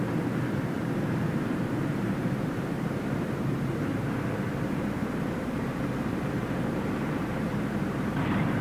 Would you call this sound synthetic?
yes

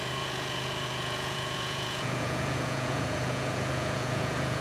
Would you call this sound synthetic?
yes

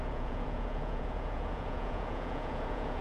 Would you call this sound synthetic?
yes